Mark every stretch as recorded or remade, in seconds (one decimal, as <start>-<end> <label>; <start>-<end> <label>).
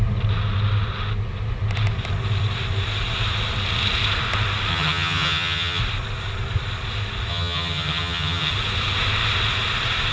0.0-4.7 recorded; 4.7-5.8 remade; 5.8-7.3 recorded; 7.3-8.5 remade; 8.5-10.1 recorded